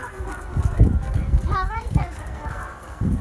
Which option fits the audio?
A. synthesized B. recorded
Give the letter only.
A